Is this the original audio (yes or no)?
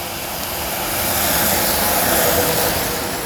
yes